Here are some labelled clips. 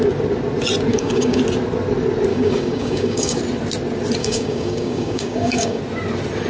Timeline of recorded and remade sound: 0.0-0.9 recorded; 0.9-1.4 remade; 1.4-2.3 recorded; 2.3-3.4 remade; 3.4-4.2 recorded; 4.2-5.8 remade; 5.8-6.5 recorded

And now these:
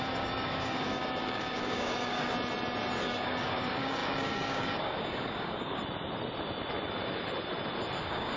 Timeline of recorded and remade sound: 0.0-2.3 remade; 2.3-3.0 recorded; 3.0-5.8 remade; 5.8-8.0 recorded; 8.0-8.4 remade